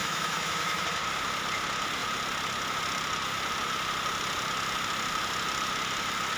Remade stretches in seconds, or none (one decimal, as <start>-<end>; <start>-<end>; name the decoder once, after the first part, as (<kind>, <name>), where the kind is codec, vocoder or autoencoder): 0.0-0.8 (autoencoder, DAC-VAE)